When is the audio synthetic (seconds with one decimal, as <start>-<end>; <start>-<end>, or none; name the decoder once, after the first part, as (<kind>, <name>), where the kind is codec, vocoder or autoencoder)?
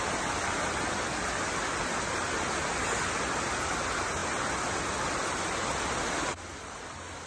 none